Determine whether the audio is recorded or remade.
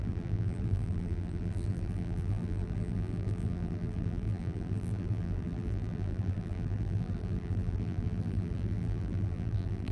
remade